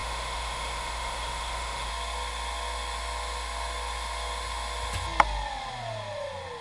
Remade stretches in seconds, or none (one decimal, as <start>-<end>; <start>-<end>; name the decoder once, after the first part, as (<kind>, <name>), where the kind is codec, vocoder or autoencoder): 0.0-1.9 (autoencoder, DAC-VAE)